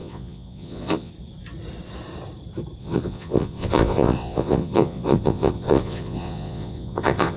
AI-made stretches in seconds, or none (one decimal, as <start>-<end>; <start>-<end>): 0.0-1.1; 2.8-7.4